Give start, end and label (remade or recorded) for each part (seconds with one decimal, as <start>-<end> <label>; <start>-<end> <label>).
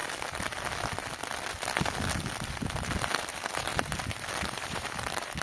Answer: 0.0-3.2 recorded; 3.2-3.7 remade; 3.7-4.4 recorded; 4.4-5.4 remade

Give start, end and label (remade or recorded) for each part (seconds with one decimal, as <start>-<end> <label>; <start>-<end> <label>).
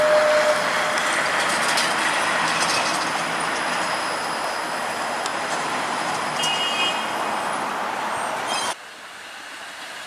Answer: 0.0-5.3 recorded; 5.3-7.0 remade; 7.0-10.1 recorded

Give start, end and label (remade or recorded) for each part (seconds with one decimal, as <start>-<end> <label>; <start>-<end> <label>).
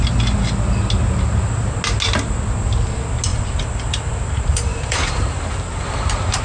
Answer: 0.0-3.3 recorded; 3.3-6.4 remade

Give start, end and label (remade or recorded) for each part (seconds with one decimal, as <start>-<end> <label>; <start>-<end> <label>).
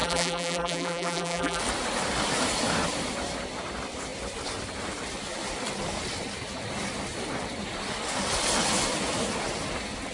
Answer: 0.0-1.6 remade; 1.6-10.1 recorded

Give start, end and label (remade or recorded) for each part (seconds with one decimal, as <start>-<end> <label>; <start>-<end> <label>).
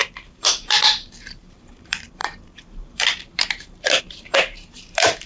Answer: 0.0-5.3 remade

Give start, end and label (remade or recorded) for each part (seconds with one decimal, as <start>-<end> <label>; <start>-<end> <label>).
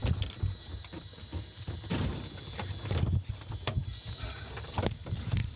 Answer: 0.0-0.8 recorded; 0.8-1.3 remade; 1.3-4.7 recorded; 4.7-5.6 remade